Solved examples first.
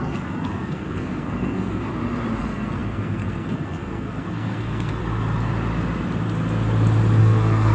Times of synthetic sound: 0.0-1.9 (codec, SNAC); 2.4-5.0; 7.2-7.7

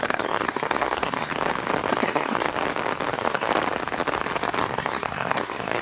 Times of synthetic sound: 0.0-1.3 (codec, SNAC); 1.9-2.5; 3.1-3.5; 4.6-5.8

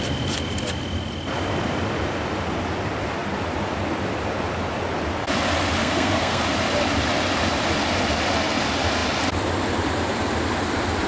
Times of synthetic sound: 5.8-6.4 (codec, SNAC)

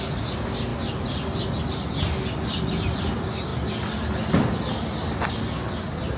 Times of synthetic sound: none